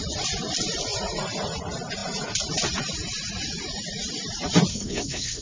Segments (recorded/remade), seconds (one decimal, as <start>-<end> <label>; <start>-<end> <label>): 0.0-4.7 recorded; 4.7-5.4 remade